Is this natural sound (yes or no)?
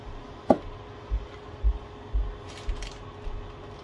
yes